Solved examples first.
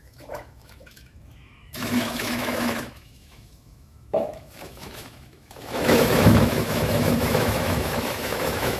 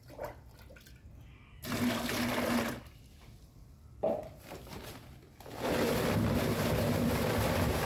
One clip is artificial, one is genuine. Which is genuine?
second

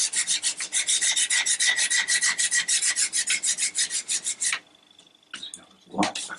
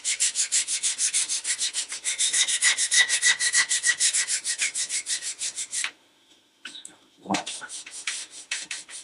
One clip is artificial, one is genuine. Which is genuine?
first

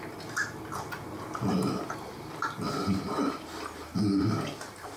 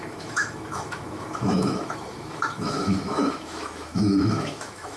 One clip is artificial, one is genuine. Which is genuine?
first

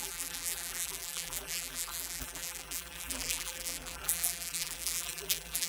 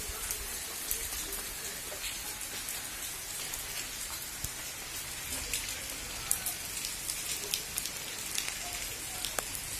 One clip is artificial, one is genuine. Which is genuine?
second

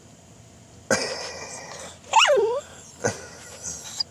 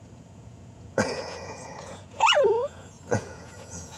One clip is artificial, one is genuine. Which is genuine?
first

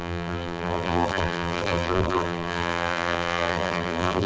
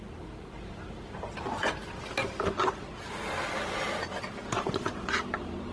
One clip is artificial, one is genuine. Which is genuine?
second